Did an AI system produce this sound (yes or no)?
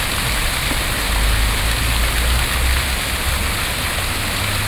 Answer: no